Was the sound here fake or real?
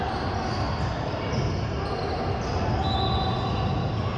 real